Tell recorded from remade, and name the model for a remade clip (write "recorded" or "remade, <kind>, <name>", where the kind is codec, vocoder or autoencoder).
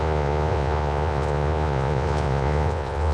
remade, vocoder, Vocos